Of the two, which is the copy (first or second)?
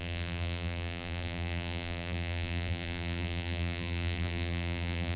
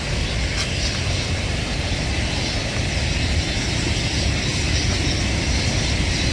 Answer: first